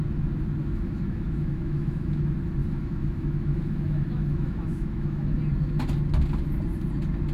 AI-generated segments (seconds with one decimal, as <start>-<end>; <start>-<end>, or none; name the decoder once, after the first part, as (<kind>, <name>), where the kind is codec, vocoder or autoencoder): 0.6-2.2 (autoencoder, DAC-VAE); 2.6-5.4